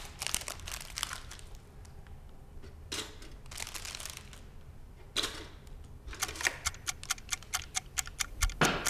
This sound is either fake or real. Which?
real